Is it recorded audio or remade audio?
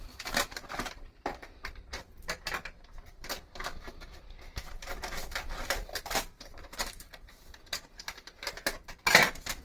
remade